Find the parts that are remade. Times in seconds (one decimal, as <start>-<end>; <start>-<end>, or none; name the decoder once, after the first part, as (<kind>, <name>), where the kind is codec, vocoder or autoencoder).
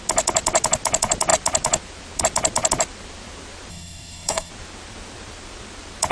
3.7-4.5 (codec, DAC)